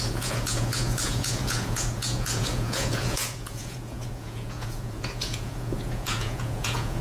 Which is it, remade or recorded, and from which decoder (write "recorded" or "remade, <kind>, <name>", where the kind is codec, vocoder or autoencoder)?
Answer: remade, vocoder, Vocos